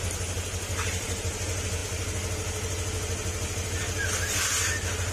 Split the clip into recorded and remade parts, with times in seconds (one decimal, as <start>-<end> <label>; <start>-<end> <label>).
0.0-5.1 recorded